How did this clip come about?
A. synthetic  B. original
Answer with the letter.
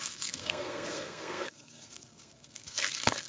A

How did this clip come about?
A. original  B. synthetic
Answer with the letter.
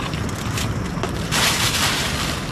A